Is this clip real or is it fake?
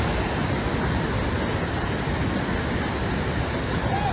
real